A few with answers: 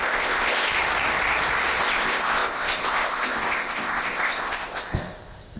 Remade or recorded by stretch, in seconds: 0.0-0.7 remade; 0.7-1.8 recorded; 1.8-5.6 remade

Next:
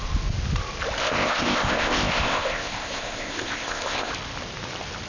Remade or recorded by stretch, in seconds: 0.0-1.0 recorded; 1.0-4.1 remade; 4.1-5.1 recorded

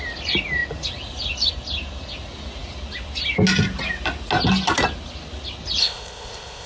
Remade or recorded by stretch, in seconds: 0.0-5.8 recorded; 5.8-6.7 remade

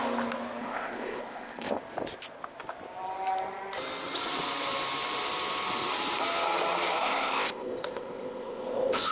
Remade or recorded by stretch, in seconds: 0.0-0.6 recorded; 0.6-1.8 remade; 1.8-7.0 recorded; 7.0-9.1 remade

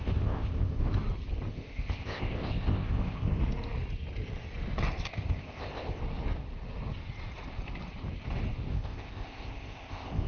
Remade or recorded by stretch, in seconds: 0.0-0.8 remade; 0.8-1.5 recorded; 1.5-3.4 remade; 3.4-5.1 recorded; 5.1-6.0 remade; 6.0-8.7 recorded; 8.7-10.3 remade

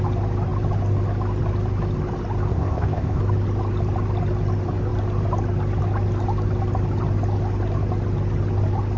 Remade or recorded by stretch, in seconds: 0.0-2.5 recorded; 2.5-3.2 remade; 3.2-9.0 recorded

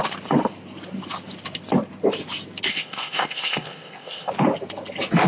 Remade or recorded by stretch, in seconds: 0.0-2.7 recorded; 2.7-4.3 remade; 4.3-5.3 recorded